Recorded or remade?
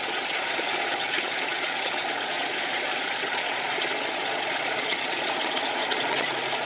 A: remade